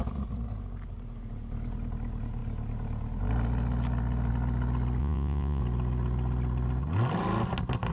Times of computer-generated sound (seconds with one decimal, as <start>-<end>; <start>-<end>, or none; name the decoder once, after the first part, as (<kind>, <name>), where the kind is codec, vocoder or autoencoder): 5.0-5.6 (vocoder, Vocos)